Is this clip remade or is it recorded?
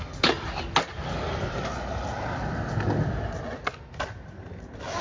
recorded